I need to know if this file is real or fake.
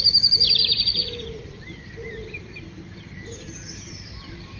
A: fake